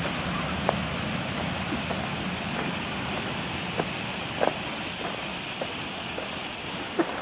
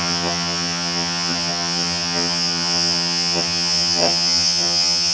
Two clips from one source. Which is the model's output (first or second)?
second